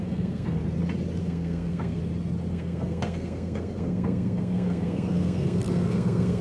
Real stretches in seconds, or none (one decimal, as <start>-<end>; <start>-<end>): 0.6-1.2; 2.0-2.5

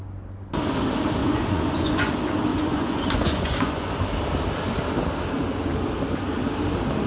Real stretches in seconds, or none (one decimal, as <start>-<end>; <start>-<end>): 0.0-1.2; 2.1-2.5; 3.9-7.1

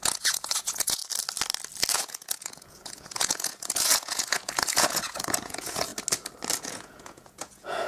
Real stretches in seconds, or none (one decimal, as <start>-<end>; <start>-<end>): 1.0-1.9; 5.9-6.6

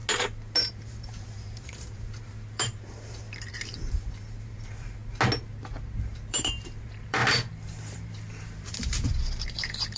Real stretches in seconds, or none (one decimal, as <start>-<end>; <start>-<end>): 0.0-0.7; 5.0-6.3; 7.2-7.8

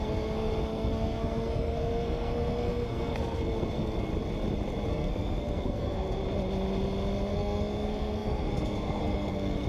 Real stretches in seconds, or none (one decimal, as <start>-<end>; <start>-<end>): 4.1-4.9; 6.2-7.3

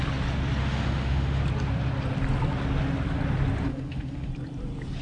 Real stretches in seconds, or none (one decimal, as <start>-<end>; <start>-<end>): 0.0-0.6; 1.4-3.7; 4.3-5.0

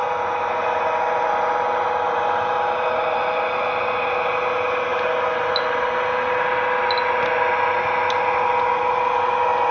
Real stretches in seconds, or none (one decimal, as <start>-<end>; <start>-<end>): 0.0-9.7